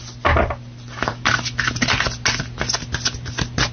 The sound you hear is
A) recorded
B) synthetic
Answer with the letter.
A